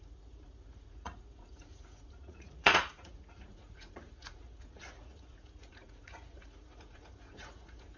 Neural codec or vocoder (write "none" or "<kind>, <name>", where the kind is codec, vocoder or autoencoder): vocoder, Vocos